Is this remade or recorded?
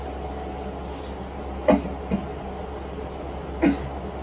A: recorded